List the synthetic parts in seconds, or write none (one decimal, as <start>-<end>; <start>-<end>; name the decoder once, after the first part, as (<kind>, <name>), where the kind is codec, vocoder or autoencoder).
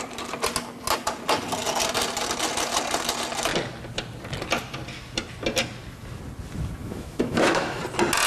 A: 6.8-7.8 (autoencoder, DAC-VAE)